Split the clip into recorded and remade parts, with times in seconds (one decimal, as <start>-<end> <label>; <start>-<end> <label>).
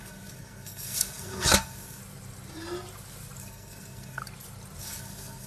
0.0-2.0 remade; 2.0-3.4 recorded; 3.4-4.2 remade; 4.2-4.8 recorded; 4.8-5.5 remade